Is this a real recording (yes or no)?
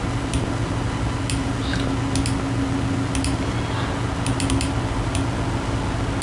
yes